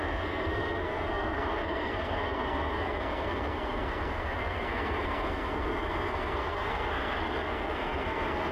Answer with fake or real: fake